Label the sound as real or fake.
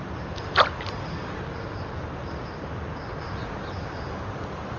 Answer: real